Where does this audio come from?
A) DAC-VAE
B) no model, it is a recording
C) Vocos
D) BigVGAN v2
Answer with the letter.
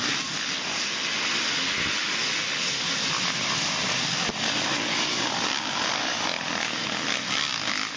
B